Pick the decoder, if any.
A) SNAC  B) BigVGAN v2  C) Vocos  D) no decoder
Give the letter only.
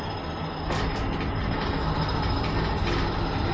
D